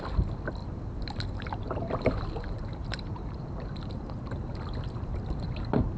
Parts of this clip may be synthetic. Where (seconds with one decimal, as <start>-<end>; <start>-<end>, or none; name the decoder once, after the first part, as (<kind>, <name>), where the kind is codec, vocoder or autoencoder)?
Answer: 0.6-2.1 (vocoder, BigVGAN v2); 2.8-3.4